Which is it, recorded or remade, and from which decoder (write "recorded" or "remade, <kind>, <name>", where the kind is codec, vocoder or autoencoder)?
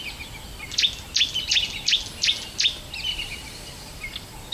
recorded